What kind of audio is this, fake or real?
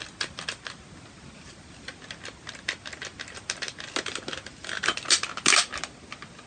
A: real